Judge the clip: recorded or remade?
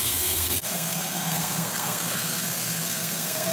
remade